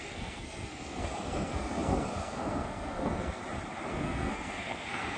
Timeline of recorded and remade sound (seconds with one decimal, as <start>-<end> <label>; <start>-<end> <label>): 0.0-3.4 remade; 3.4-3.9 recorded; 3.9-5.2 remade